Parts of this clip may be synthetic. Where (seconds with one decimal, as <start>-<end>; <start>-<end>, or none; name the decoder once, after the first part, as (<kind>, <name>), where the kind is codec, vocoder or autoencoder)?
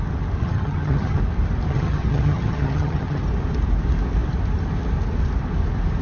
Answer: 0.4-1.2 (vocoder, HiFi-GAN); 1.7-3.2